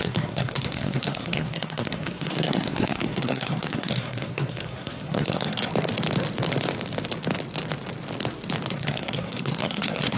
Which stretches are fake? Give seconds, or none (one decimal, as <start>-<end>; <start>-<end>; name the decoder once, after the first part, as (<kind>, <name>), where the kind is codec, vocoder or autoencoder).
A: 0.0-5.7 (codec, SNAC); 8.7-10.2